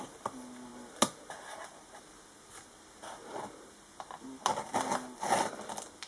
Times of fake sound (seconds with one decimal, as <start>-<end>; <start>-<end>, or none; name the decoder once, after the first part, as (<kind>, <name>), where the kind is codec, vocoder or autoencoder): none